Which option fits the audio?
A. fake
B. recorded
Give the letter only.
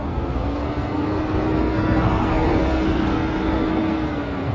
A